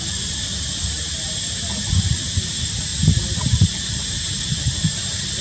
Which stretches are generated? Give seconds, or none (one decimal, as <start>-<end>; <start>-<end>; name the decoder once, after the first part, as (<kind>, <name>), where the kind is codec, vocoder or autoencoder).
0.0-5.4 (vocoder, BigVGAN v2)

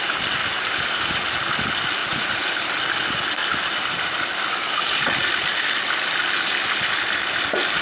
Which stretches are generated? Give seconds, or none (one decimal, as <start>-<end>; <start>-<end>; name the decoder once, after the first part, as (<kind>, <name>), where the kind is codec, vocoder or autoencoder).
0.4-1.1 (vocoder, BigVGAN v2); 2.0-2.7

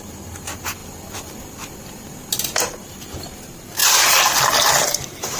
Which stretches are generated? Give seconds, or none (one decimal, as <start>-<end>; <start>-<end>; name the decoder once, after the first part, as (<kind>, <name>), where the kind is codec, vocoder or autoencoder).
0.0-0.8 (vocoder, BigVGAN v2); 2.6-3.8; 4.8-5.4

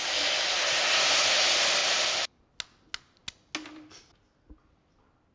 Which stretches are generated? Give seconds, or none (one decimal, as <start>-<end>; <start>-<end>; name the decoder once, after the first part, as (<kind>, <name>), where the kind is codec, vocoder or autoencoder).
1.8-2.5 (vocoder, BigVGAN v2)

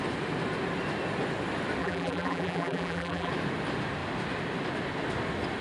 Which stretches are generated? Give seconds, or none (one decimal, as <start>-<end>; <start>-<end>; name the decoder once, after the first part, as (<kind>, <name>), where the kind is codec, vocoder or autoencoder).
1.8-3.3 (vocoder, BigVGAN v2)